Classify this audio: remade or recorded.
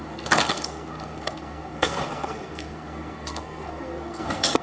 remade